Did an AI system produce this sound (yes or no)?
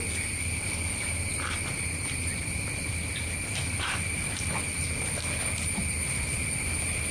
no